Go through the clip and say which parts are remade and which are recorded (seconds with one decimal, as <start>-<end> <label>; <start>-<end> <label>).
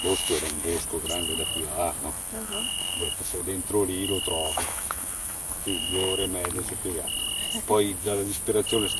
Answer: 0.0-0.7 remade; 0.7-2.1 recorded; 2.1-3.4 remade; 3.4-4.3 recorded; 4.3-6.3 remade; 6.3-8.0 recorded; 8.0-8.4 remade; 8.4-9.0 recorded